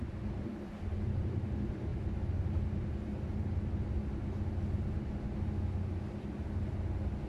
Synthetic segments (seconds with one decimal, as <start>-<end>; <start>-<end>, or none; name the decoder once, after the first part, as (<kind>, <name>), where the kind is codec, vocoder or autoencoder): none